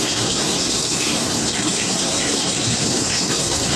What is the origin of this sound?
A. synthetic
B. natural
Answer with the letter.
A